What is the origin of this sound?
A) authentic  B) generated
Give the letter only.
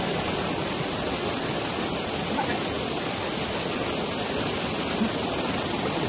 A